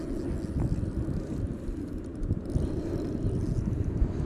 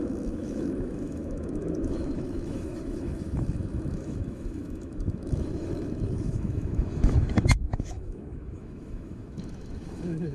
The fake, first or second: second